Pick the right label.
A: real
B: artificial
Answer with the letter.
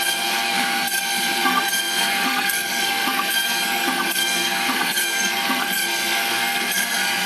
B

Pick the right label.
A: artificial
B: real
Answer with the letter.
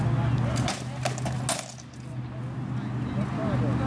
B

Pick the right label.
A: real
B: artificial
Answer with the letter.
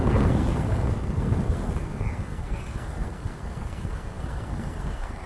B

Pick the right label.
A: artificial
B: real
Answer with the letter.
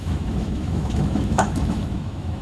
A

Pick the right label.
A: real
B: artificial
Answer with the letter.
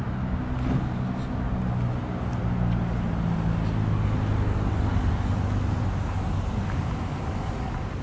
A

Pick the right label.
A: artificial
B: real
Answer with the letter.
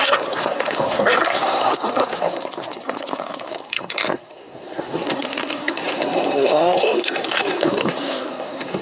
A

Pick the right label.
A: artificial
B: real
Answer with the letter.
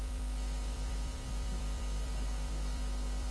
A